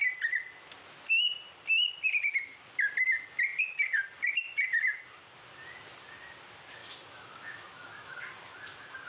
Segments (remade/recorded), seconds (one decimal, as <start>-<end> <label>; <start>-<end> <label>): 0.0-6.8 recorded; 6.8-8.2 remade; 8.2-9.1 recorded

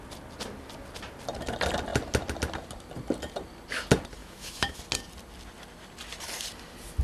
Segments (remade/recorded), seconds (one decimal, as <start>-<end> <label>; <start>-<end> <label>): 0.0-4.2 recorded; 4.2-4.8 remade; 4.8-7.0 recorded